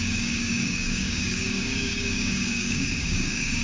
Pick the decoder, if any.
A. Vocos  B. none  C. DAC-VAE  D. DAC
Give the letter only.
D